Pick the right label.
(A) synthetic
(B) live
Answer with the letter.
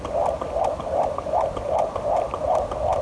B